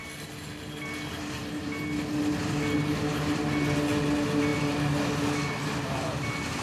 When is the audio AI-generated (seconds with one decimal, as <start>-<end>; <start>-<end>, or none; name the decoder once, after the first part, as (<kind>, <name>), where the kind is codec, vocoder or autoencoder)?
none